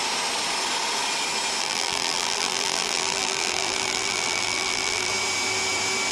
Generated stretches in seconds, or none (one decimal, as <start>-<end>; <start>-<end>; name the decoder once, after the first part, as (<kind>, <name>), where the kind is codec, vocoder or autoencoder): 1.6-5.1 (vocoder, BigVGAN v2)